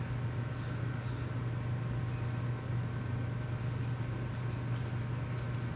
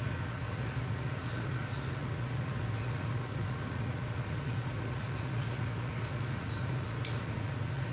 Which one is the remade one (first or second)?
second